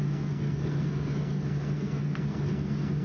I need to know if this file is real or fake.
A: fake